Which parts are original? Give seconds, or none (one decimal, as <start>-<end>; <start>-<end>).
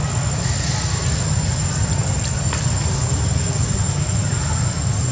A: 0.0-5.1